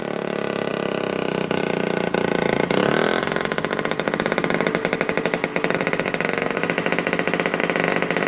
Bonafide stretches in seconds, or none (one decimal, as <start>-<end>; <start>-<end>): 0.0-8.3